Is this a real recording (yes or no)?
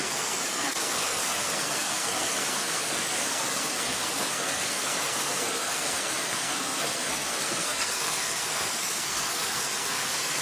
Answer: no